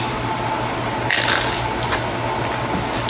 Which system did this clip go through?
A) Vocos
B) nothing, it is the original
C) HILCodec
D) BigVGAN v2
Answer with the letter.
B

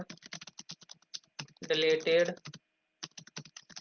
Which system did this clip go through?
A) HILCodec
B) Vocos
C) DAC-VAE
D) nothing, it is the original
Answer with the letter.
D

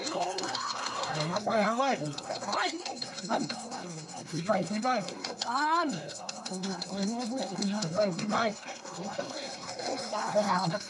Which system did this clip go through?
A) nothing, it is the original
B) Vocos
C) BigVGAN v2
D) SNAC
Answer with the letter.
D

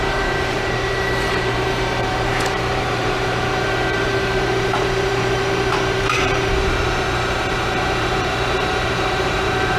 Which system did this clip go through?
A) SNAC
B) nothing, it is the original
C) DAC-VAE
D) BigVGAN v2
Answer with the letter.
D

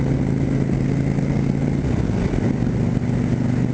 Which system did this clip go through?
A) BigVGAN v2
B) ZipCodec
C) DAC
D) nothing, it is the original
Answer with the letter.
D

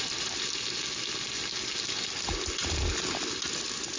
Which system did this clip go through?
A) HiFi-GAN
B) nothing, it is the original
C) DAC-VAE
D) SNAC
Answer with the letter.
B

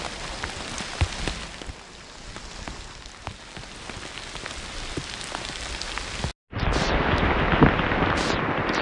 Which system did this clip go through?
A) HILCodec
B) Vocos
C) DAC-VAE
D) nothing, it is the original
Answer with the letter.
D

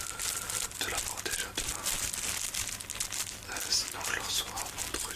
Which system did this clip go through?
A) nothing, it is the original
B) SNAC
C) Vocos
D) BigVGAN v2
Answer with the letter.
A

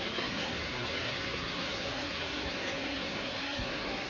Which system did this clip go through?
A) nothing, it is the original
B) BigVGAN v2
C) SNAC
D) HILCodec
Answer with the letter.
C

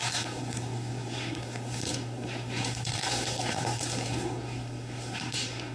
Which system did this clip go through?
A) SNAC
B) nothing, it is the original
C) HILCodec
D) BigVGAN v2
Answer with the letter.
A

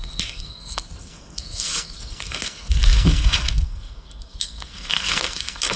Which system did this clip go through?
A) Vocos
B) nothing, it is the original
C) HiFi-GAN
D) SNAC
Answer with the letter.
D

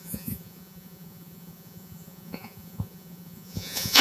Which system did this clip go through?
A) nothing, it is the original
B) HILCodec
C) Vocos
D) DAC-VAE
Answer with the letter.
C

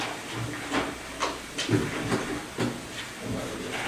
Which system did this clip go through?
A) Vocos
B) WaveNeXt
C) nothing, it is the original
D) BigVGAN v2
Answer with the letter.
C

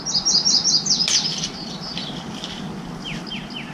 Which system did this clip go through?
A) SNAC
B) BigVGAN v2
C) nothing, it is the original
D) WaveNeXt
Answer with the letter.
C